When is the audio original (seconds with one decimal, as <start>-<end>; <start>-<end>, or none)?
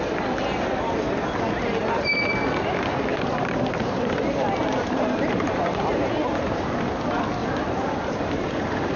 0.0-3.1; 6.1-7.4